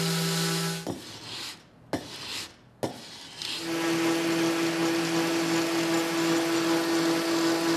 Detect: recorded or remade recorded